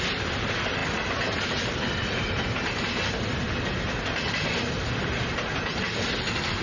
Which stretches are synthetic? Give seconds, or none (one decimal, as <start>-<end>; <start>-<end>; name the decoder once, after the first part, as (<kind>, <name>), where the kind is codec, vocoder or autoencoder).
none